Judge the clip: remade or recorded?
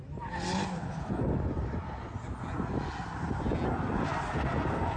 recorded